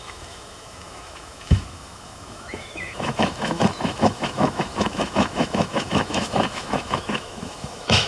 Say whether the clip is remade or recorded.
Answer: remade